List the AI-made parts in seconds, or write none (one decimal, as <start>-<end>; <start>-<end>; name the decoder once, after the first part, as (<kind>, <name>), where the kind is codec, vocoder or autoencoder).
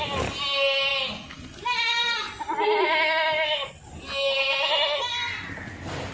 none